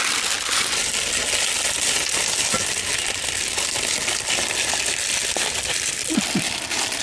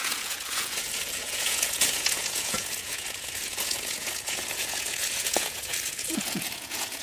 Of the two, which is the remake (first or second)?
second